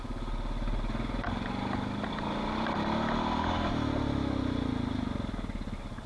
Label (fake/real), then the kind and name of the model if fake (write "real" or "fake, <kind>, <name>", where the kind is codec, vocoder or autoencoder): real